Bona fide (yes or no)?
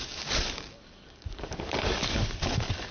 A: no